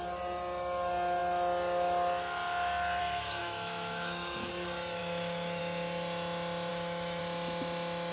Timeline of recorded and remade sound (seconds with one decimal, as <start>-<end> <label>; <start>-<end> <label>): 0.0-3.4 recorded; 3.4-4.5 remade; 4.5-5.0 recorded; 5.0-5.6 remade; 5.6-6.7 recorded; 6.7-7.2 remade; 7.2-8.1 recorded